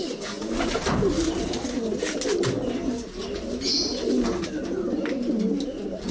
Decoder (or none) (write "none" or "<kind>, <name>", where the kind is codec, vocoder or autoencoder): none